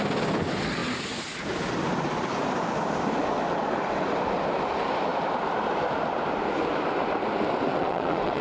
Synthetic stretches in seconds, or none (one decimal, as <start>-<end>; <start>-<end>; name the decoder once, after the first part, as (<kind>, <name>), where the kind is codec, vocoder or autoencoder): 7.7-8.4 (vocoder, WaveNeXt)